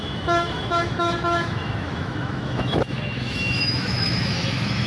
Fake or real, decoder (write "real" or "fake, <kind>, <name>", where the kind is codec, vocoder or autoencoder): fake, autoencoder, DAC-VAE